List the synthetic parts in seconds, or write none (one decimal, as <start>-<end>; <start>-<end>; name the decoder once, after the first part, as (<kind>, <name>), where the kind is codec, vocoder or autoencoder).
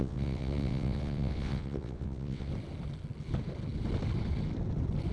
0.0-2.5 (vocoder, WaveNeXt)